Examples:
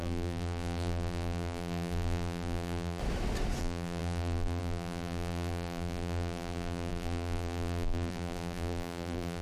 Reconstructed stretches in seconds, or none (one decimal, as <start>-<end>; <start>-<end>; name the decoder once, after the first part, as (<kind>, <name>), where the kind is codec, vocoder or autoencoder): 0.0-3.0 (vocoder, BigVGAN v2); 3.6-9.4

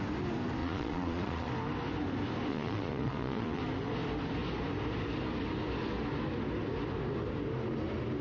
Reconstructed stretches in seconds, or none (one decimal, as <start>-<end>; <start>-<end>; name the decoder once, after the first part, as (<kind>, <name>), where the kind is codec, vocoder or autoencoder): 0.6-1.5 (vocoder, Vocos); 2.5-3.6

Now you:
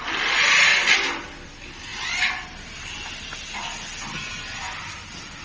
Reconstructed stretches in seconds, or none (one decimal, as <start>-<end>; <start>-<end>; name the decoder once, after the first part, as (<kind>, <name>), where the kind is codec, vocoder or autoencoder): none